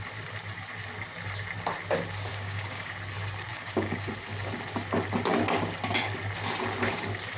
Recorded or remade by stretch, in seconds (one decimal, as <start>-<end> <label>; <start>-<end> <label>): 0.0-2.3 recorded; 2.3-2.9 remade; 2.9-3.5 recorded; 3.5-4.1 remade; 4.1-7.4 recorded